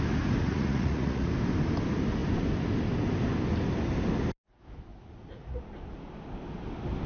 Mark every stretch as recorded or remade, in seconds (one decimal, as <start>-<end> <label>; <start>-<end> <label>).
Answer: 0.0-0.4 recorded; 0.4-1.3 remade; 1.3-4.9 recorded; 4.9-5.7 remade; 5.7-7.1 recorded

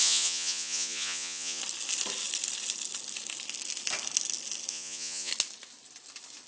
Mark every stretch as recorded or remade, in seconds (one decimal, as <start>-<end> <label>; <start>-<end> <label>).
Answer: 0.0-1.6 remade; 1.6-4.7 recorded; 4.7-5.3 remade; 5.3-6.5 recorded

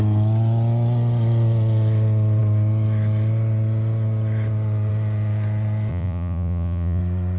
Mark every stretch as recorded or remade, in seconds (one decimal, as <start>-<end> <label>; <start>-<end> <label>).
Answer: 0.0-5.9 recorded; 5.9-7.0 remade; 7.0-7.4 recorded

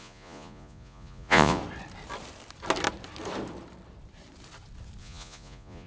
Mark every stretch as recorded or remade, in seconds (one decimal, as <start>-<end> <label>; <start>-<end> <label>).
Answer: 0.0-1.6 remade; 1.6-5.0 recorded; 5.0-5.9 remade

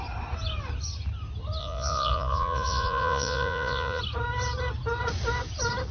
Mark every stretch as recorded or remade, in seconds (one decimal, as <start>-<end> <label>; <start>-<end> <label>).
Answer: 0.0-1.6 recorded; 1.6-4.0 remade; 4.0-5.9 recorded

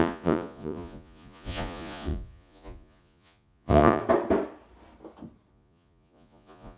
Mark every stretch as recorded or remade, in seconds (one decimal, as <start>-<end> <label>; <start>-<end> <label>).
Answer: 0.0-4.0 remade; 4.0-5.5 recorded; 5.5-6.8 remade

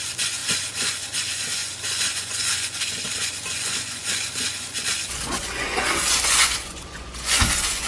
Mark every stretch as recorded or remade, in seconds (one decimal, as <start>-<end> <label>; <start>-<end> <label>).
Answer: 0.0-7.9 remade

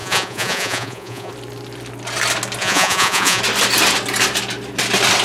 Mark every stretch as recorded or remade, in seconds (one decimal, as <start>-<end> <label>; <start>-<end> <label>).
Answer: 0.0-1.3 remade; 1.3-2.6 recorded; 2.6-3.4 remade; 3.4-5.2 recorded